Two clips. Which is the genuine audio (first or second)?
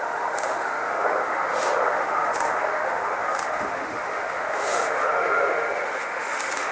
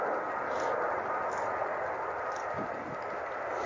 second